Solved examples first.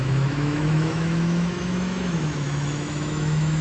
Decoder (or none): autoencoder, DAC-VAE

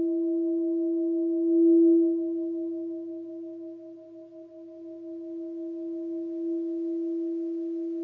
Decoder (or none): none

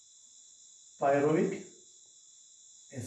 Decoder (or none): none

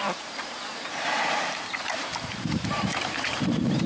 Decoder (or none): vocoder, BigVGAN v2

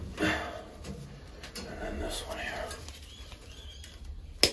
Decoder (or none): none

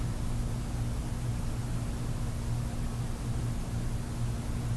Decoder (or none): none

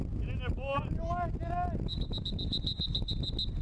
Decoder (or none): none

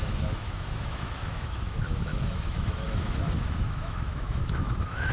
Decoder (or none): autoencoder, DAC-VAE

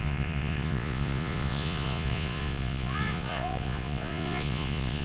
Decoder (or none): vocoder, Vocos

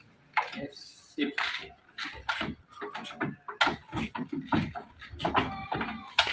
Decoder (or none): none